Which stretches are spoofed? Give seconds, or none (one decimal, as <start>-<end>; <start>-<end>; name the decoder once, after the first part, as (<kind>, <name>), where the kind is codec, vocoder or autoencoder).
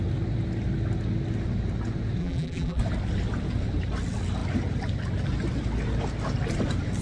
2.2-2.8 (vocoder, BigVGAN v2)